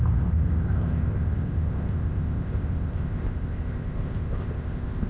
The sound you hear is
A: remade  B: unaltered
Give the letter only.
A